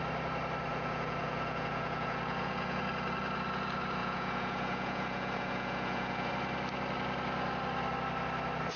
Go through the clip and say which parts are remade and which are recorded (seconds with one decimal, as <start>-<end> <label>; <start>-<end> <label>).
0.0-0.7 recorded; 0.7-2.8 remade; 2.8-4.0 recorded; 4.0-6.3 remade; 6.3-8.8 recorded